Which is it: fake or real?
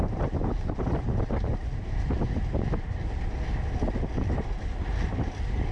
real